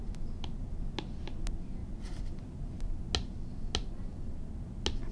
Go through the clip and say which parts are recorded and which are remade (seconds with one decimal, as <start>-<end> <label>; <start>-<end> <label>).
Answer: 0.0-5.1 recorded